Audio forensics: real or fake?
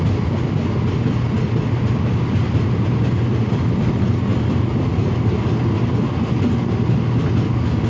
real